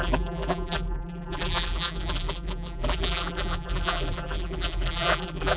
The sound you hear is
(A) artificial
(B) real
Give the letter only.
A